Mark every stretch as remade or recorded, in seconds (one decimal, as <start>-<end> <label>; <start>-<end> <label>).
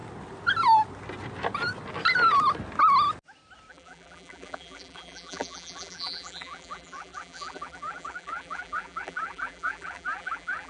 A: 0.0-3.7 recorded; 3.7-10.7 remade